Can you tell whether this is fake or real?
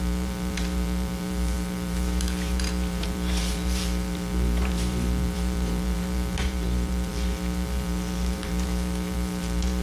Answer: fake